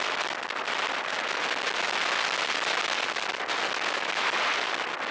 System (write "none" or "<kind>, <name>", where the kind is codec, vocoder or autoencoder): none